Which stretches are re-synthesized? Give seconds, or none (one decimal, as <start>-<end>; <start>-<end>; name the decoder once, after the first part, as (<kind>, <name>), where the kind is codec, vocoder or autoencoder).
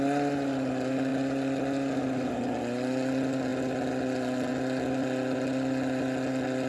none